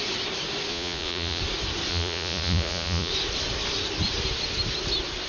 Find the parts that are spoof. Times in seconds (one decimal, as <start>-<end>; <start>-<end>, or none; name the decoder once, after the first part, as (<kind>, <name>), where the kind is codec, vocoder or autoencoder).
0.7-1.4 (vocoder, Vocos); 1.9-3.1